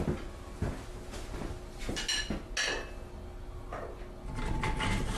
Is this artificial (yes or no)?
no